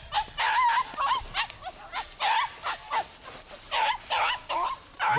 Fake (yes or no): no